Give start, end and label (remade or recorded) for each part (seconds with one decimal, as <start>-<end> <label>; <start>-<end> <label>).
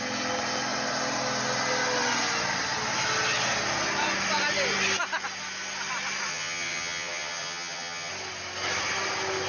0.0-6.3 recorded; 6.3-8.1 remade; 8.1-9.5 recorded